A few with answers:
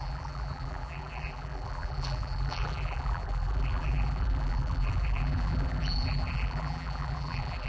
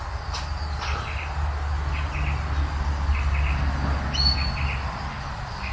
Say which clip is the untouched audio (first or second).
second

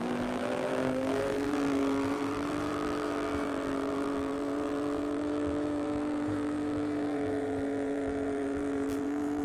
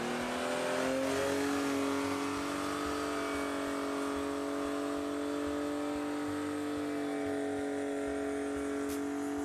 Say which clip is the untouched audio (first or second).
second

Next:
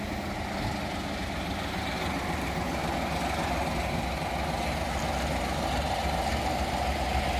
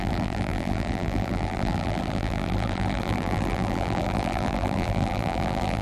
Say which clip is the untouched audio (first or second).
first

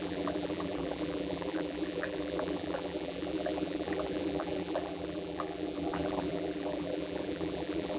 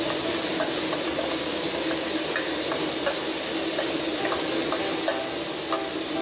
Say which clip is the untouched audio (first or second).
second